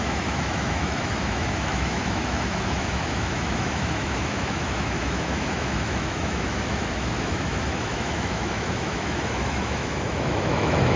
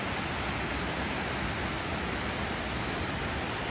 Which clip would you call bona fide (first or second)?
second